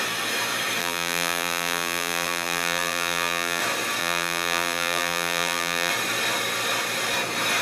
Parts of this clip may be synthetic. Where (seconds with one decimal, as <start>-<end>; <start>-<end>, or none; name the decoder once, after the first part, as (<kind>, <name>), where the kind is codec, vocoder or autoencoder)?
0.8-3.6 (vocoder, BigVGAN v2); 4.0-5.9